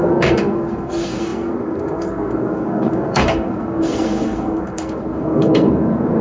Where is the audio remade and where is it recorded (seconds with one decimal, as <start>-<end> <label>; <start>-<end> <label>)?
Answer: 0.0-6.2 remade